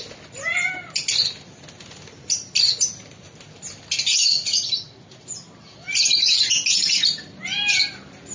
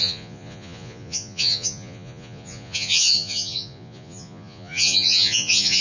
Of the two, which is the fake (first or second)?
second